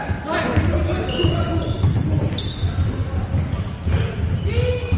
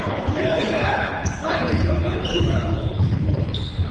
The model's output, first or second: second